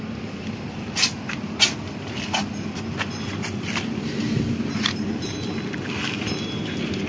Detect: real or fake real